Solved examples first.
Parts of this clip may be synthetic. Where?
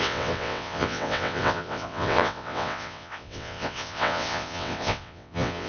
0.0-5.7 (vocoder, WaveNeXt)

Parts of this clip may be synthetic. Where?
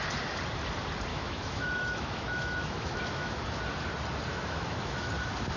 1.1-3.6 (autoencoder, DAC-VAE); 4.3-5.1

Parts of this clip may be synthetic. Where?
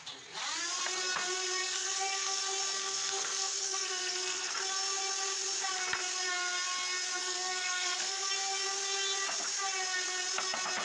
1.6-2.4 (codec, SNAC); 2.8-4.6; 7.2-8.3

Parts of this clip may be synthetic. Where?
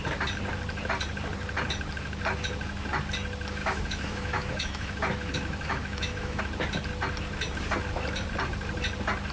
3.6-6.4 (autoencoder, DAC-VAE)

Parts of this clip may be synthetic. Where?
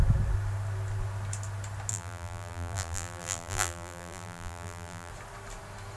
1.9-5.1 (vocoder, BigVGAN v2)